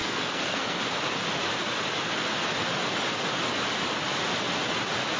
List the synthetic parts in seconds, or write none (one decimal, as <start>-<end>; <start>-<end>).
0.0-0.8